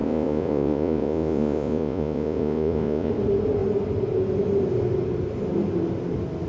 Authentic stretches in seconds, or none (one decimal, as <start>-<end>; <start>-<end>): 3.1-6.5

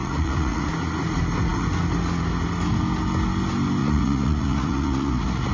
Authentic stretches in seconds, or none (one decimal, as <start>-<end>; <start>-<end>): 0.7-3.8

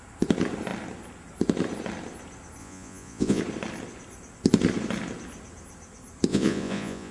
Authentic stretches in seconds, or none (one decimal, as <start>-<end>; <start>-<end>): 0.0-2.6; 3.4-6.3

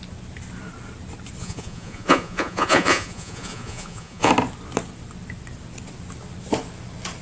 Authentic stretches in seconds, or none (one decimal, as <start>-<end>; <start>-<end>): 0.0-1.4; 4.3-7.2

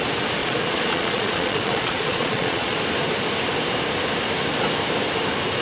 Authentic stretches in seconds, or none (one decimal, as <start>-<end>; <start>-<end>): 0.0-0.4; 2.8-5.6

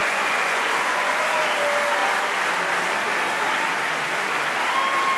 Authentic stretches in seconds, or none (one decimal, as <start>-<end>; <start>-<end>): 1.2-5.2